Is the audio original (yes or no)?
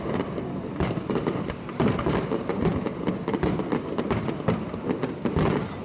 yes